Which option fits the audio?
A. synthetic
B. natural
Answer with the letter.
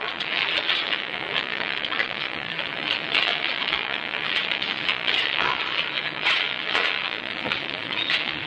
A